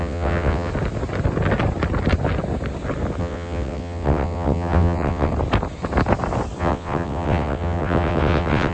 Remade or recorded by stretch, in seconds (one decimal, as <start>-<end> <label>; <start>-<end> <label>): 0.0-0.7 remade; 0.7-3.2 recorded; 3.2-5.3 remade; 5.3-6.6 recorded; 6.6-8.7 remade